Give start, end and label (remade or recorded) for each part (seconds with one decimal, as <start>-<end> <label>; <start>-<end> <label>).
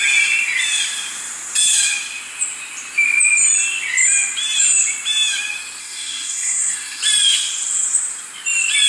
0.0-5.8 recorded; 5.8-7.0 remade; 7.0-8.9 recorded